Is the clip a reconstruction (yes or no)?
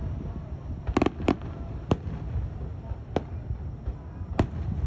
no